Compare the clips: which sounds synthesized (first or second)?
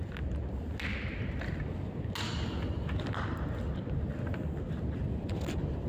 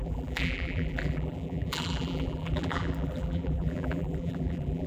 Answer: second